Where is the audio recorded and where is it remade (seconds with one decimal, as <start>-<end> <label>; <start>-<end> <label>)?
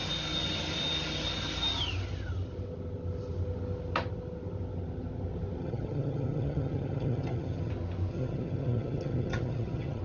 0.0-5.6 recorded; 5.6-7.7 remade; 7.7-8.1 recorded; 8.1-10.0 remade